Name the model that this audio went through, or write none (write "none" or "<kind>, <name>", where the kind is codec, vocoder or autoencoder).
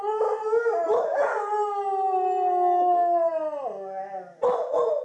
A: none